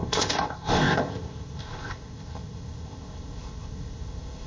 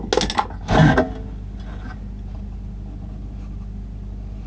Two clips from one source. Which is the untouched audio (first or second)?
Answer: second